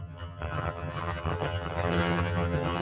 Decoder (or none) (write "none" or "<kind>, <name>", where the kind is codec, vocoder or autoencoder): vocoder, HiFi-GAN